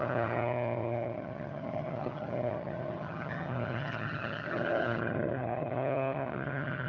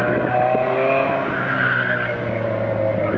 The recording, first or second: second